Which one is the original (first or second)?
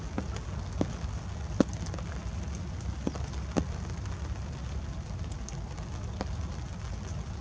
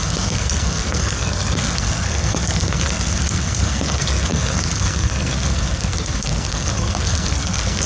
first